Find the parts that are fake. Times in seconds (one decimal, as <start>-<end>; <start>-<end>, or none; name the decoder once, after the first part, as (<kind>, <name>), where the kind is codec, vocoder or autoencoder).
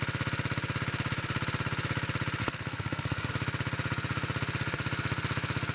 2.4-3.3 (codec, SNAC)